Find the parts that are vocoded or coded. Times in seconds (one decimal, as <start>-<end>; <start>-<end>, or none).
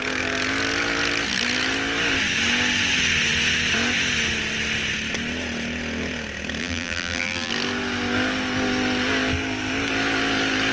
6.6-7.5